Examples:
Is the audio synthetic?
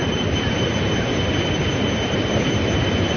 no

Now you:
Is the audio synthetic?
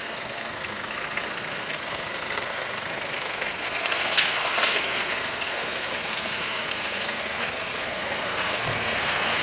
yes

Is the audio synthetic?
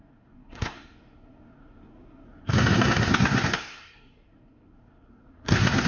yes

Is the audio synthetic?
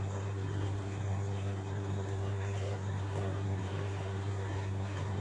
yes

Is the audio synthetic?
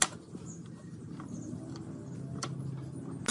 no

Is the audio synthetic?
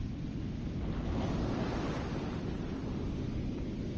no